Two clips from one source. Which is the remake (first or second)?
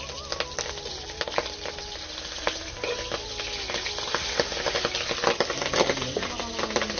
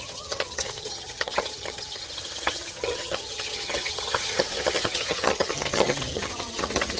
second